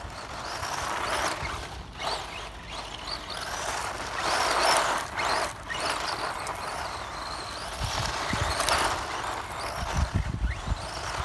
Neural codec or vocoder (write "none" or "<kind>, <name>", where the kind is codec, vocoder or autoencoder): none